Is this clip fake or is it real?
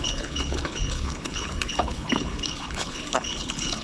fake